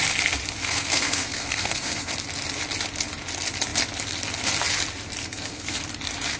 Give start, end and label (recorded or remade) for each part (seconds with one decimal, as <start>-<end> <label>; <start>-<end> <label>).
0.0-0.6 recorded; 0.6-2.1 remade; 2.1-5.2 recorded; 5.2-5.8 remade; 5.8-6.4 recorded